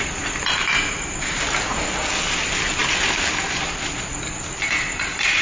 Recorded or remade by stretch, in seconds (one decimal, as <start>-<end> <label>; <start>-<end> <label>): 0.0-5.4 recorded